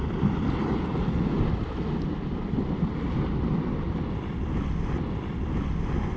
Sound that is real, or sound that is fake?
real